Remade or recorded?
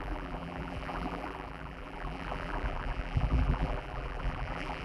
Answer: remade